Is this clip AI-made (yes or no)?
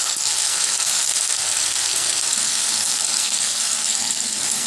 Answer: yes